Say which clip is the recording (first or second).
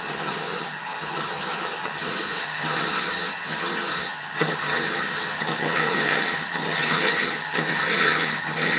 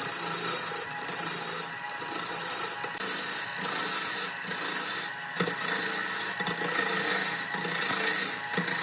second